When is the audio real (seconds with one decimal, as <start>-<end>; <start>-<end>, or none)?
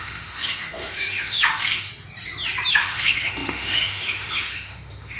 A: 1.9-2.7